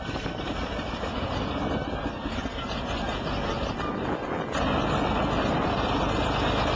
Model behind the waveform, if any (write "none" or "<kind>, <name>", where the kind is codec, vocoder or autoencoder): none